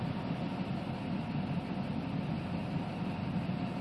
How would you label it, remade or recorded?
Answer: recorded